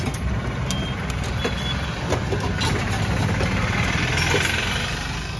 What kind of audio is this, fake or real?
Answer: real